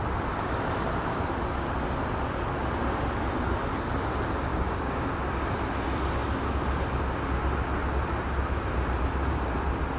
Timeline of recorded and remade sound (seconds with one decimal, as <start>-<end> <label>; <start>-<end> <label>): 0.0-4.5 recorded; 4.5-5.3 remade; 5.3-10.0 recorded